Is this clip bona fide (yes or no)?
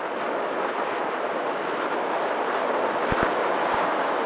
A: yes